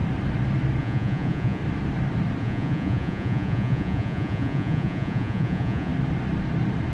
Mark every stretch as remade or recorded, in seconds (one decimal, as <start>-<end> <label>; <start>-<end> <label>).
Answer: 0.0-0.8 recorded; 0.8-1.6 remade; 1.6-2.4 recorded; 2.4-5.9 remade; 5.9-6.9 recorded

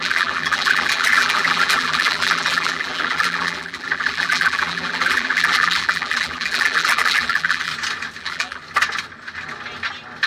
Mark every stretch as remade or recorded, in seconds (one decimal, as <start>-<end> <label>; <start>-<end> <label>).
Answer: 0.0-7.7 remade; 7.7-8.2 recorded; 8.2-8.6 remade; 8.6-10.3 recorded